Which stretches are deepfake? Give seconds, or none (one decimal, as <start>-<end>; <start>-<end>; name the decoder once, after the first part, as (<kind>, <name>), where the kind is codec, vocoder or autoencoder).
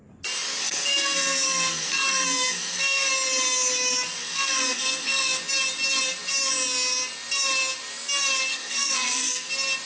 0.6-3.1 (codec, SNAC); 4.2-5.4; 8.5-9.5